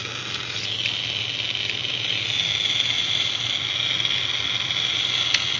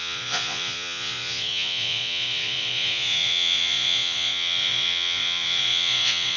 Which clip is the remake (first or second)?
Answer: second